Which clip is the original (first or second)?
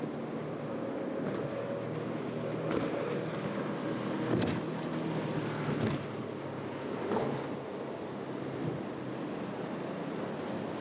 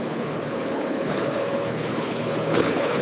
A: first